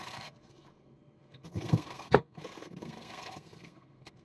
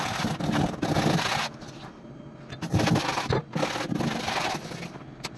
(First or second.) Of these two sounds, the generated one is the first